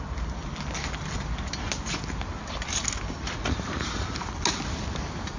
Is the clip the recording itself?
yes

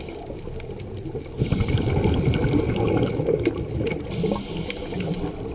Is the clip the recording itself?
yes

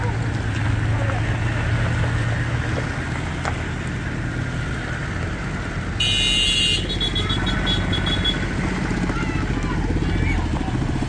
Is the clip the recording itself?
yes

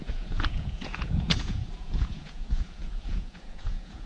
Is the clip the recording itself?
no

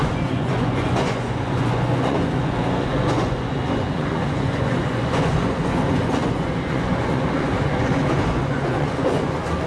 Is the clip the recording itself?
no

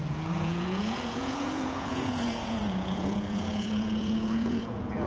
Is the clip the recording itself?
no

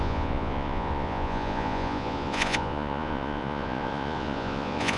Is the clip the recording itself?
no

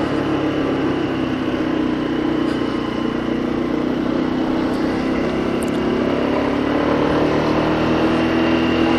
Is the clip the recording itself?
yes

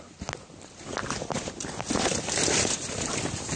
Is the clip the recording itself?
yes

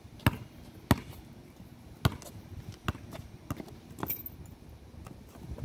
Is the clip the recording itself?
yes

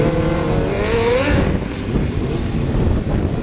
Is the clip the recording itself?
yes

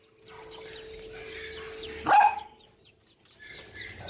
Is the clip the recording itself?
yes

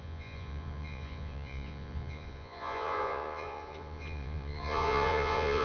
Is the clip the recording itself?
no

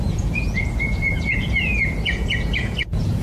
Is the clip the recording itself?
no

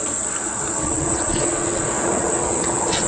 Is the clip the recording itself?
no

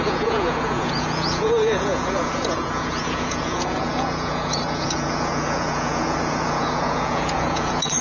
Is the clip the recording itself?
no